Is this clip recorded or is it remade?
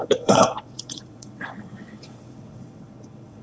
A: remade